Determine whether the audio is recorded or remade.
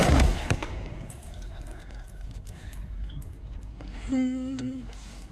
remade